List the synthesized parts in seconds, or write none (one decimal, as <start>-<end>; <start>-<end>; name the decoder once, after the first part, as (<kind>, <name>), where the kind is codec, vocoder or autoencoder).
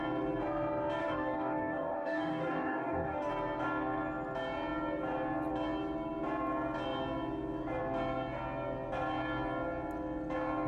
1.0-3.3 (codec, DAC)